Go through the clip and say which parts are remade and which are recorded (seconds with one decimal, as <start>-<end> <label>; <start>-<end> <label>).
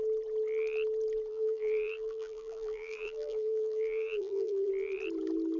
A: 0.0-1.3 recorded; 1.3-4.7 remade; 4.7-5.6 recorded